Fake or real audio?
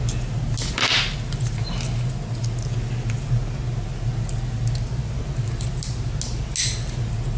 real